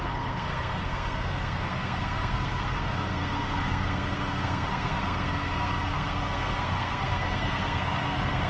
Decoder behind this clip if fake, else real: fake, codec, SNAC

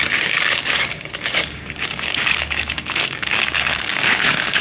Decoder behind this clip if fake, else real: fake, codec, DAC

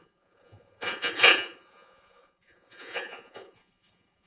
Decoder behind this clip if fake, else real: fake, vocoder, Vocos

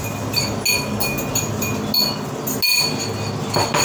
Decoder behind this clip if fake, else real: real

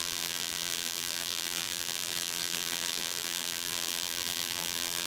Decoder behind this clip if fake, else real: fake, vocoder, BigVGAN v2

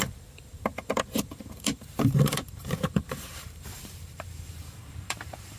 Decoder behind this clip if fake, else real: fake, vocoder, BigVGAN v2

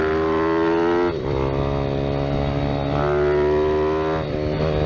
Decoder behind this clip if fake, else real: real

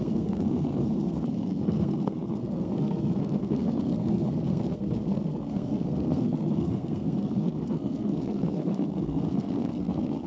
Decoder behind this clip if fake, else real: fake, codec, SNAC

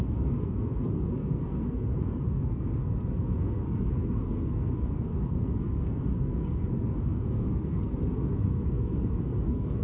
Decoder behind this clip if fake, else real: fake, codec, SNAC